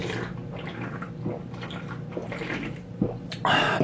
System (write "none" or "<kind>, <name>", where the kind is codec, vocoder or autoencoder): none